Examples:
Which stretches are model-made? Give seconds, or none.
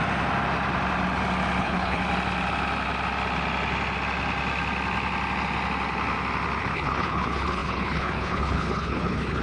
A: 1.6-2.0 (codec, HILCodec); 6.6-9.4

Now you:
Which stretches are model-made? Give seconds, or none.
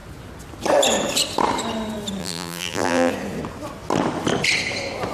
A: 2.2-3.1 (vocoder, BigVGAN v2)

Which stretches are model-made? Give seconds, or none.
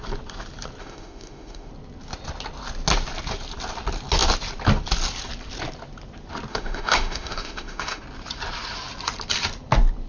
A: 0.8-1.7 (autoencoder, DAC-VAE); 6.5-8.0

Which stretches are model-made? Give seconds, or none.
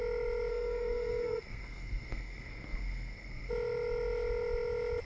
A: 0.5-3.5 (codec, SNAC)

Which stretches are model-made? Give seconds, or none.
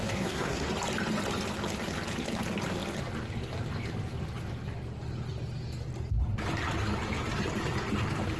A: 0.0-0.7 (codec, SNAC)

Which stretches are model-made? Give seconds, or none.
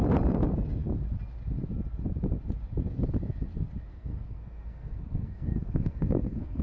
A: 3.9-6.6 (codec, SNAC)